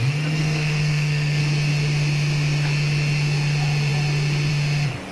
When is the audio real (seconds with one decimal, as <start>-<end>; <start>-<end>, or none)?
0.0-0.4; 1.4-5.1